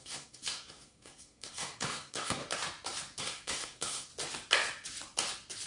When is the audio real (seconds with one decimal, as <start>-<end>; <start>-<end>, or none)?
2.4-3.2; 4.1-5.7